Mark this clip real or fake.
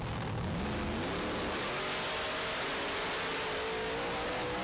real